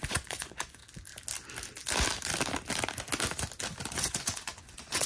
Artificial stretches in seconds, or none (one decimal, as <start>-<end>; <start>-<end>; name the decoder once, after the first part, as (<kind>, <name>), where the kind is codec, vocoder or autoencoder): 0.0-0.8 (vocoder, Vocos); 3.9-5.1